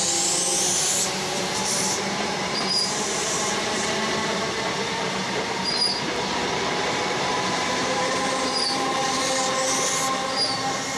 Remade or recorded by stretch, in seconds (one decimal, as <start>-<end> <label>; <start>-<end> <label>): 0.0-0.5 recorded; 0.5-4.4 remade; 4.4-5.2 recorded; 5.2-9.7 remade; 9.7-11.0 recorded